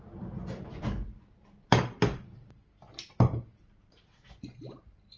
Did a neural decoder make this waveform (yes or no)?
no